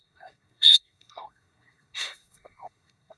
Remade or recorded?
remade